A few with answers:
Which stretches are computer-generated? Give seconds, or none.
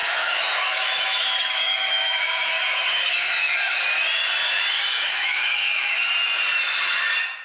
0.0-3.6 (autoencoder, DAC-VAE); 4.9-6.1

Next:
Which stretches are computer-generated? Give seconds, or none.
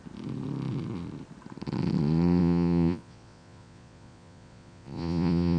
2.4-5.6 (vocoder, Vocos)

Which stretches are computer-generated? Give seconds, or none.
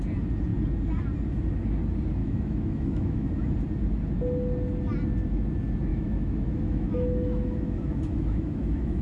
2.2-3.3 (autoencoder, DAC-VAE); 5.9-9.0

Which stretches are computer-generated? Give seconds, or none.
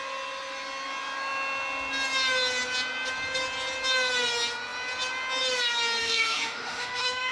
6.0-7.3 (autoencoder, DAC-VAE)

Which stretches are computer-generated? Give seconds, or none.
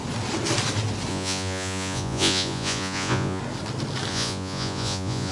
1.1-3.4 (vocoder, Vocos); 4.1-5.3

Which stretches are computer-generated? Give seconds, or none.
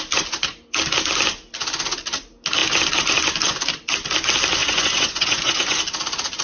4.6-5.8 (vocoder, Vocos)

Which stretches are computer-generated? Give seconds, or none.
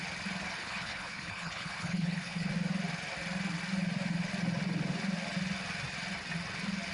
0.6-2.5 (codec, HILCodec)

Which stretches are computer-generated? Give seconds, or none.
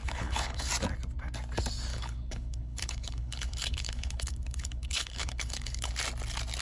0.0-0.7 (codec, HILCodec); 1.9-5.9